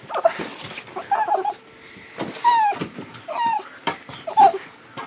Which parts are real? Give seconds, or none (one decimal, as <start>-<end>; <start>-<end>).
0.5-2.9